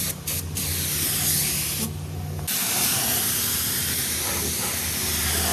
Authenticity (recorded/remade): recorded